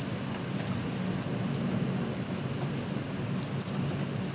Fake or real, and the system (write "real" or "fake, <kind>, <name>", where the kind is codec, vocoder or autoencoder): real